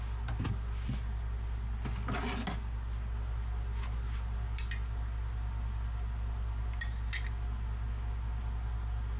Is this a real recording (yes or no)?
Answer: yes